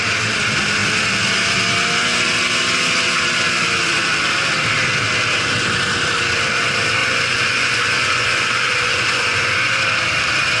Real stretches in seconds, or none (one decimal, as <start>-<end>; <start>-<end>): 0.0-7.0; 9.8-10.6